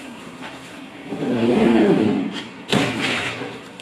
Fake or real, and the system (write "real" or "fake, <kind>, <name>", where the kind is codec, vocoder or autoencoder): fake, codec, SNAC